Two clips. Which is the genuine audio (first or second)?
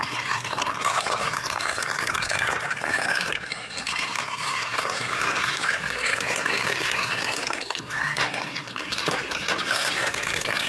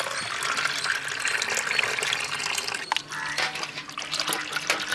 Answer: second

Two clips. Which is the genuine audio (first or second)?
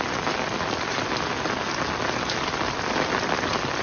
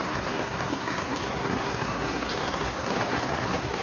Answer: first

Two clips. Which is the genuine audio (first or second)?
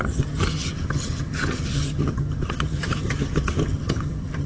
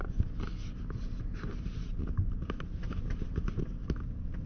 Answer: second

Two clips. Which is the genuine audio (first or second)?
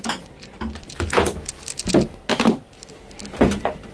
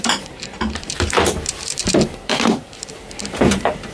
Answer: first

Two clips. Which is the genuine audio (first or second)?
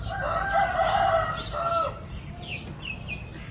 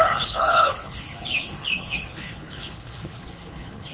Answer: first